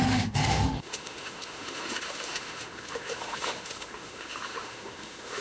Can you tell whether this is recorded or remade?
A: remade